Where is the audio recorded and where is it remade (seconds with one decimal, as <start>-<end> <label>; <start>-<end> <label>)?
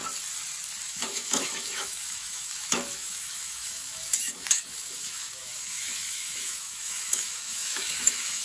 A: 0.0-0.8 recorded; 0.8-8.4 remade